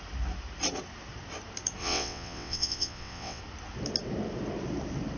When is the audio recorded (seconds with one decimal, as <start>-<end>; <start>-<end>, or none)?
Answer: 0.0-1.8; 3.4-5.2